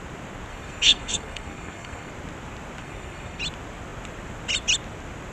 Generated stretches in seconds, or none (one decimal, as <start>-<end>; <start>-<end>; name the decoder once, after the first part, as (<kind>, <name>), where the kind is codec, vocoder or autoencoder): 0.5-2.1 (codec, SNAC); 2.8-3.4